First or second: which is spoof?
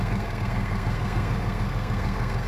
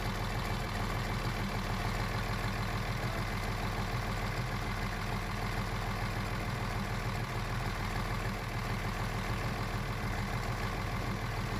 first